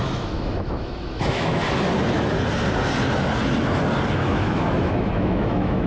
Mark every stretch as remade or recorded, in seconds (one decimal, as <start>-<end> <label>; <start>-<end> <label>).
0.0-1.6 remade; 1.6-4.1 recorded; 4.1-5.9 remade